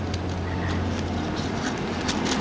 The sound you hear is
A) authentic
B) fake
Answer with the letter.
A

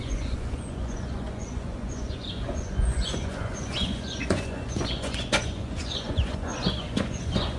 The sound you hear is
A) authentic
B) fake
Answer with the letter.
B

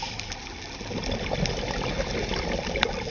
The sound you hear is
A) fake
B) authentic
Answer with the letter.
B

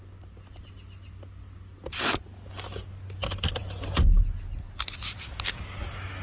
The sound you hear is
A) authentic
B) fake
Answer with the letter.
A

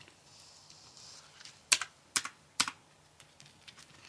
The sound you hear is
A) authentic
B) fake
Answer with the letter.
A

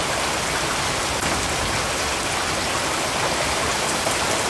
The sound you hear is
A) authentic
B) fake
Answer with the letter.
A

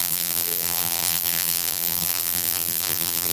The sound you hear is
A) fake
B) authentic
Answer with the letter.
A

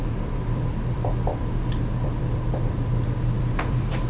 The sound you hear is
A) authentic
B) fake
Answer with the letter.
B